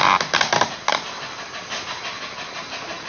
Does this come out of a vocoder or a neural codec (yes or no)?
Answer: no